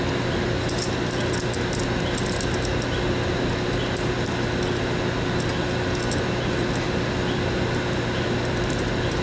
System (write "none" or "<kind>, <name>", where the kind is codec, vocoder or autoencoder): none